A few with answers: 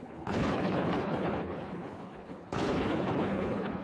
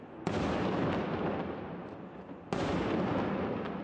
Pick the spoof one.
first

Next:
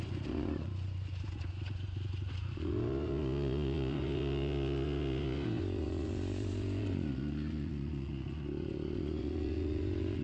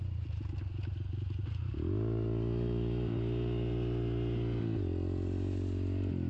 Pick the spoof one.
first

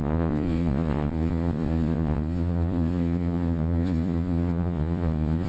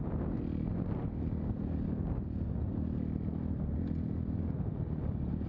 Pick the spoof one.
first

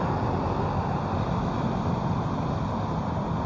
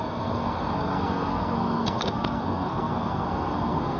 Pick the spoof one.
second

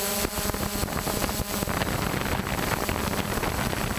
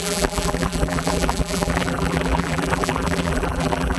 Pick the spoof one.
second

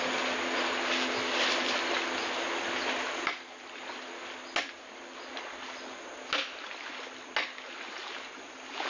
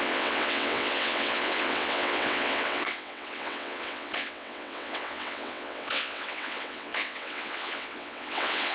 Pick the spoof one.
second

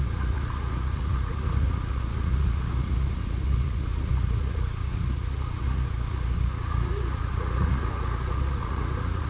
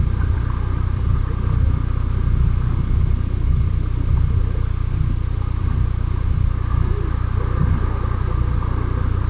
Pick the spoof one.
first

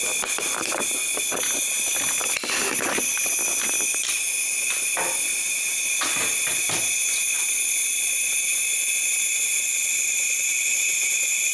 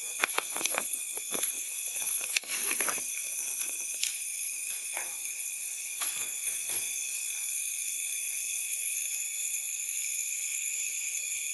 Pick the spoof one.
second